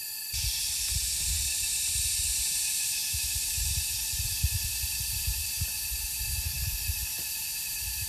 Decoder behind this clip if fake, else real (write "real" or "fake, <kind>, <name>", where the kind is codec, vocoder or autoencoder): fake, vocoder, BigVGAN v2